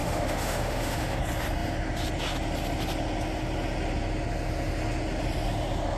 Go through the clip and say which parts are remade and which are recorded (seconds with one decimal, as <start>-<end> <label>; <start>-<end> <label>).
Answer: 0.0-1.2 remade; 1.2-6.0 recorded